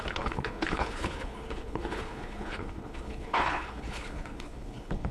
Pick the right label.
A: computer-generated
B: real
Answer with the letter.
A